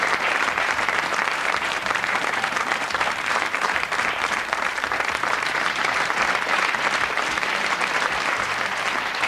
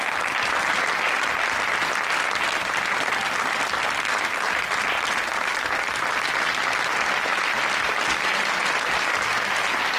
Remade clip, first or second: first